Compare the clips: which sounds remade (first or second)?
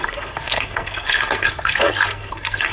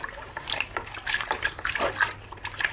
first